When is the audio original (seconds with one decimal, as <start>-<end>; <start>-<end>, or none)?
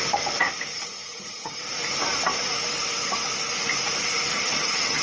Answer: 0.0-0.7; 1.6-4.3